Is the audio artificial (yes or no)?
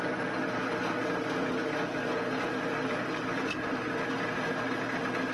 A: no